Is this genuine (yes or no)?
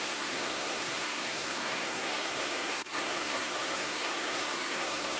no